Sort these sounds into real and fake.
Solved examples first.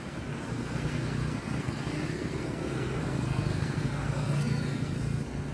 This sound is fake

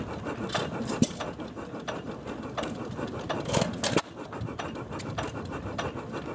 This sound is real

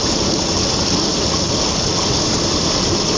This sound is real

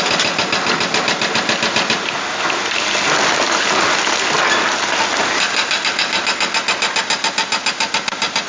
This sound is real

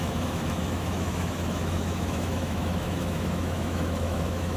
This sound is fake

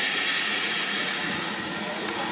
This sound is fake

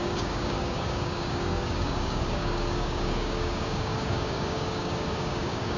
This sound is fake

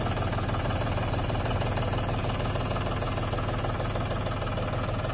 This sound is real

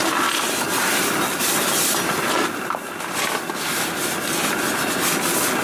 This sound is real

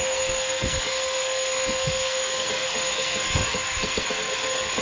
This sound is fake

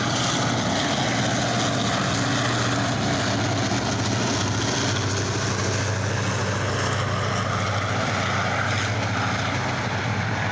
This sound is real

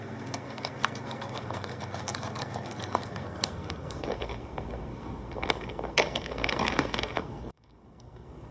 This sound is fake